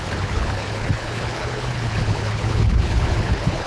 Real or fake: fake